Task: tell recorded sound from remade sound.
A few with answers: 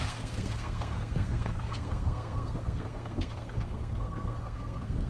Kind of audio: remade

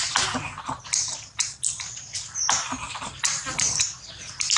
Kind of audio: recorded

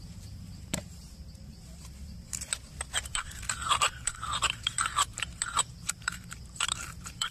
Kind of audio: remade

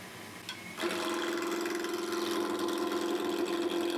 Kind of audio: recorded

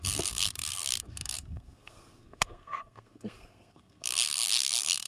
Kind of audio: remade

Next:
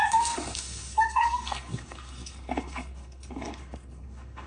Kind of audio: remade